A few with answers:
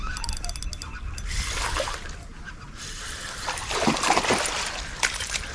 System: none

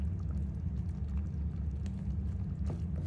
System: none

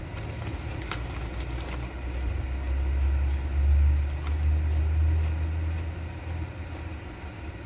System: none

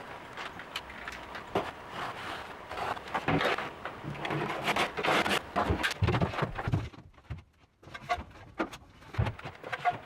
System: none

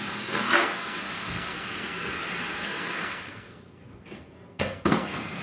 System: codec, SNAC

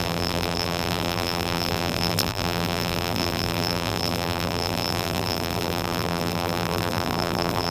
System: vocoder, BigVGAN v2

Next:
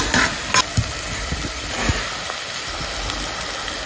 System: none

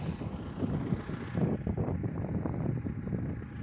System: none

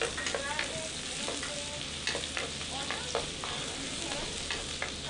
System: none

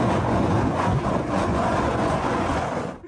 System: vocoder, Vocos